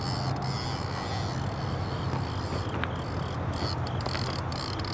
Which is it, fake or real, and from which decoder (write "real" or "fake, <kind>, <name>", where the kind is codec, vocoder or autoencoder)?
real